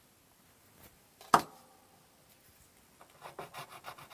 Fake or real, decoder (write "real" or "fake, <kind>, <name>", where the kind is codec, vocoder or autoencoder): real